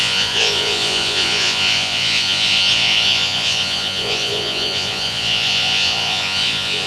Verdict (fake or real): fake